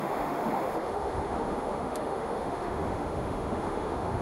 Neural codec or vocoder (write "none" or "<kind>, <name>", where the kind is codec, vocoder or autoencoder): autoencoder, DAC-VAE